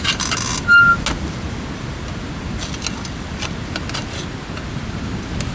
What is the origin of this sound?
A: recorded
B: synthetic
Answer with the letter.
A